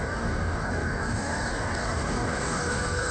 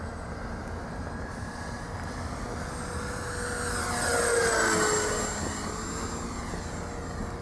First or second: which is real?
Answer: second